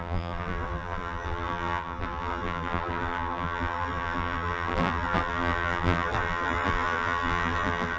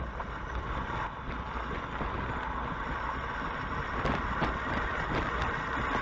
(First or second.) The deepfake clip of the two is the first